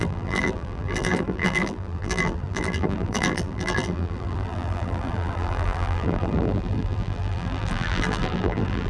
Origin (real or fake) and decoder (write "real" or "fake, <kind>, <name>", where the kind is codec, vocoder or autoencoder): fake, vocoder, BigVGAN v2